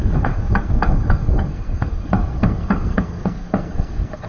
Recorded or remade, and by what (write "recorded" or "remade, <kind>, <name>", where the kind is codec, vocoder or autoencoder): remade, codec, SNAC